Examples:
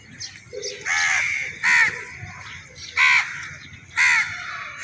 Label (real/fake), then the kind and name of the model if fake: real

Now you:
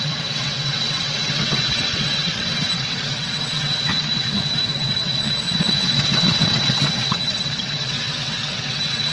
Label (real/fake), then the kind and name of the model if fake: fake, vocoder, WaveNeXt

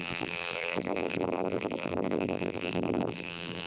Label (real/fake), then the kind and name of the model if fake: fake, vocoder, BigVGAN v2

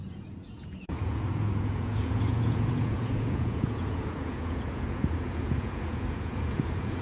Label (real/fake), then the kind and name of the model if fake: fake, vocoder, Vocos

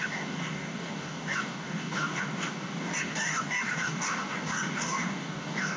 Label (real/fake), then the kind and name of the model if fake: fake, codec, DAC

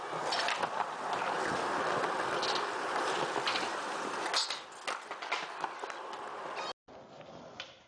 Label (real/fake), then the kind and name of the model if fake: real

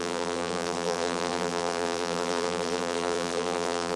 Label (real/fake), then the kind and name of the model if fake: fake, vocoder, BigVGAN v2